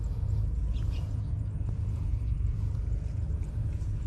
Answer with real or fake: fake